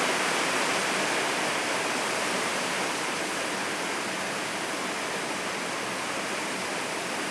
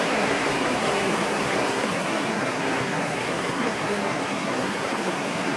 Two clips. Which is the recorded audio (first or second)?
first